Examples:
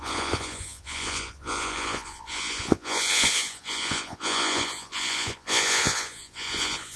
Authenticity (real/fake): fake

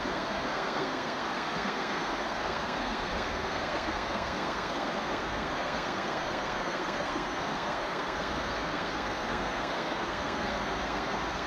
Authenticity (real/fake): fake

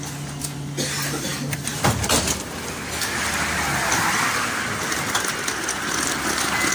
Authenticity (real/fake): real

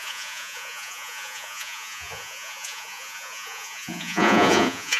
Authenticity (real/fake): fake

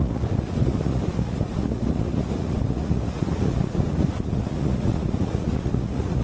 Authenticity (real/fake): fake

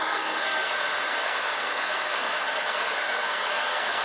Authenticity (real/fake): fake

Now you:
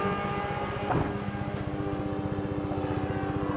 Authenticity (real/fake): real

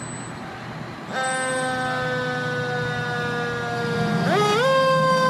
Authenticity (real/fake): real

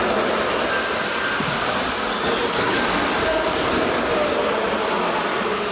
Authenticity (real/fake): real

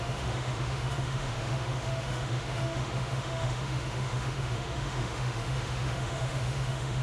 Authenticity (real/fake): fake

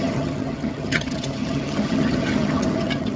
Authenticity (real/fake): fake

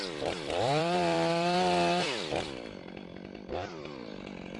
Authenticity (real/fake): fake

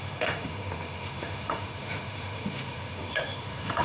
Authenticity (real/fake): fake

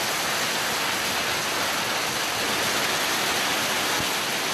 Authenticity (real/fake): real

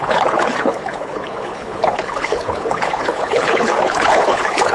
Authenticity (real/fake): fake